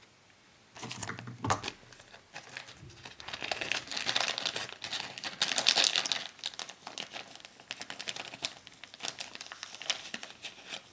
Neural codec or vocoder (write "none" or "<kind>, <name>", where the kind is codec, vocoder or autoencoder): none